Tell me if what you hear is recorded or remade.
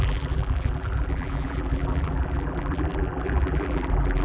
remade